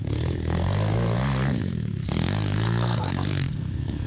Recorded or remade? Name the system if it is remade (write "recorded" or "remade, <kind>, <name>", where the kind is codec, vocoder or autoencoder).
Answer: remade, codec, SNAC